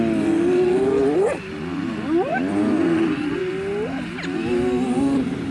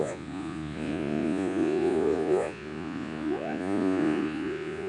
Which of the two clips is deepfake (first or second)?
second